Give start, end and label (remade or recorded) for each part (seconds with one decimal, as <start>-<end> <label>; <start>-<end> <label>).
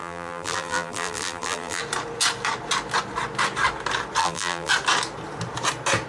0.0-1.8 remade; 1.8-4.2 recorded; 4.2-4.7 remade; 4.7-6.1 recorded